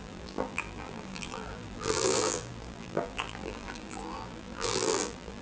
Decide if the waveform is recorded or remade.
remade